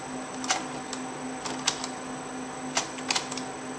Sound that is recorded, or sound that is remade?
recorded